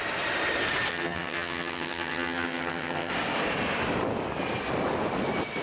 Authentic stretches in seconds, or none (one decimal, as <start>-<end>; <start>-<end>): 0.0-0.9; 3.1-5.6